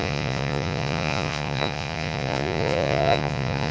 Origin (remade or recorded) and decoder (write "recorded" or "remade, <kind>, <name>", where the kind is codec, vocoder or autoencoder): remade, vocoder, Vocos